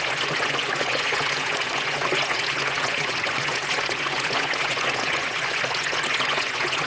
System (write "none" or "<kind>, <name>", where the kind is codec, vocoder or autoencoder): vocoder, Vocos